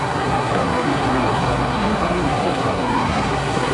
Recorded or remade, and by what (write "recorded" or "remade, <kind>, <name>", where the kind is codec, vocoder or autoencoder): remade, codec, SNAC